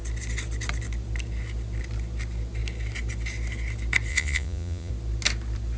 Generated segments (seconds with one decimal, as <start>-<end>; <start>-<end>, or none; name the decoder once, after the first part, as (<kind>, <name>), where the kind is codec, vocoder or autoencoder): 4.1-4.9 (vocoder, Vocos)